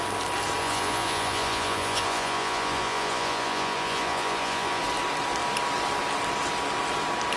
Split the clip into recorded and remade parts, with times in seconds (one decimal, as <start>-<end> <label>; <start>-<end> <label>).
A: 0.0-0.6 recorded; 0.6-4.8 remade; 4.8-7.4 recorded